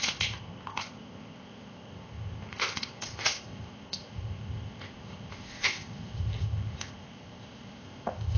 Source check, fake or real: fake